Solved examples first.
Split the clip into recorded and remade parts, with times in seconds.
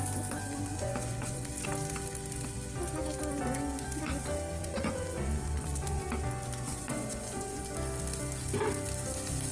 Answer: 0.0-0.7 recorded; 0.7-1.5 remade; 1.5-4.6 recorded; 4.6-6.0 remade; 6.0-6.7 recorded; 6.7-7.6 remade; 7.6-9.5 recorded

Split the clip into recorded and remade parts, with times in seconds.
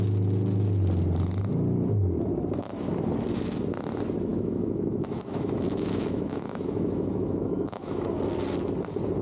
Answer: 0.0-4.3 recorded; 4.3-8.1 remade; 8.1-9.2 recorded